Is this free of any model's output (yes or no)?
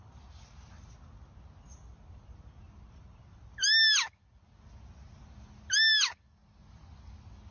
yes